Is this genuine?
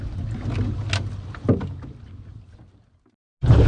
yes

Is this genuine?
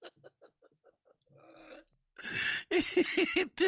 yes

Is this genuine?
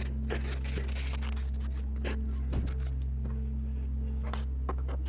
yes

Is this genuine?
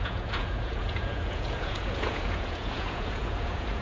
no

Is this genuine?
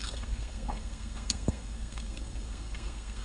no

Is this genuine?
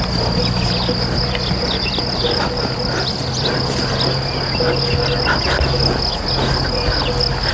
yes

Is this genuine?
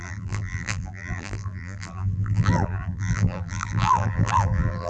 no